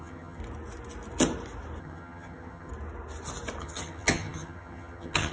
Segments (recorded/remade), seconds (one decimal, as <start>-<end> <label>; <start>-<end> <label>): 0.0-0.4 remade; 0.4-1.8 recorded; 1.8-2.7 remade; 2.7-3.6 recorded; 3.6-5.3 remade